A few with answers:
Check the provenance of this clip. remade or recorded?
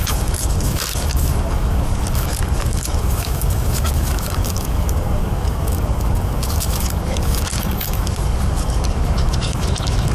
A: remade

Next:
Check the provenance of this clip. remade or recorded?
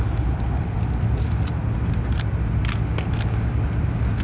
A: recorded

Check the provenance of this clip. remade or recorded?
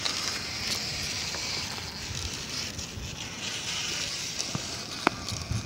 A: recorded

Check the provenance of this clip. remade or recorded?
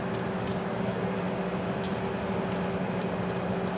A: recorded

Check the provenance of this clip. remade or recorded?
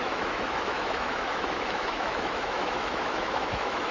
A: remade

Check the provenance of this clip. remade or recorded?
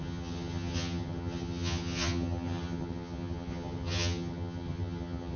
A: remade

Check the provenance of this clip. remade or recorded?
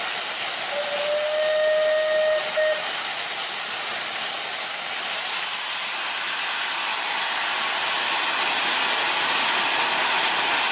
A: recorded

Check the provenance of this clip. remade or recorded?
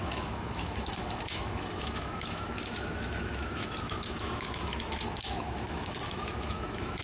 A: remade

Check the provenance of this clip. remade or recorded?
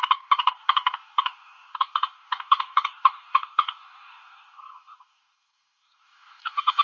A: remade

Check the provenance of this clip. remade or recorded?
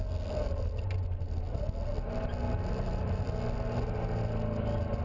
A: recorded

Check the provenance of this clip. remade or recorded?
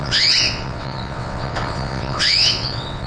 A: remade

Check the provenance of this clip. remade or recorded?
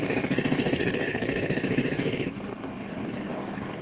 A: remade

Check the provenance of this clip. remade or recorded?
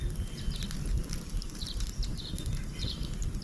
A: recorded